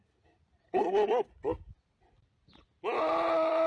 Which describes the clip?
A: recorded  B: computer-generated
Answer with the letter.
A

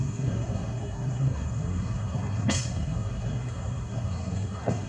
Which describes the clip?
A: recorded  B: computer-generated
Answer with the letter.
B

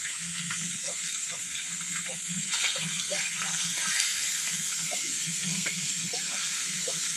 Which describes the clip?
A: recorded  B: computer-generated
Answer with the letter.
B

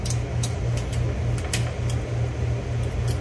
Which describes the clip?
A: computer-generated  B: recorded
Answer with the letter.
B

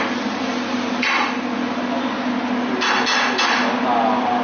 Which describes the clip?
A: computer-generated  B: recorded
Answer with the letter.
B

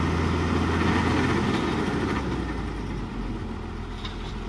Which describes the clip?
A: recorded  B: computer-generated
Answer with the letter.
A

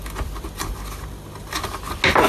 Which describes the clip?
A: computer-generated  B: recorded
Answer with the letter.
B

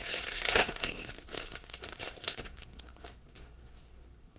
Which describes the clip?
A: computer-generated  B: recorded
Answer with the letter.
A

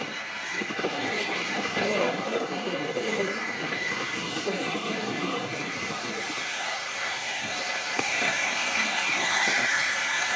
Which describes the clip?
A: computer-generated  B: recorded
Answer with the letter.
A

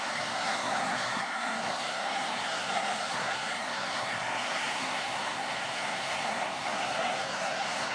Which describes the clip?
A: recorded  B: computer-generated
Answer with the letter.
B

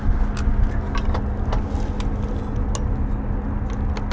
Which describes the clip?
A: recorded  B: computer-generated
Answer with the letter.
A